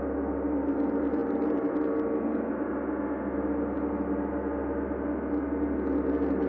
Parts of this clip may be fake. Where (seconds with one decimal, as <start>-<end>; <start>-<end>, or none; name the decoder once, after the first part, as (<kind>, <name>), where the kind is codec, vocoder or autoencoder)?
none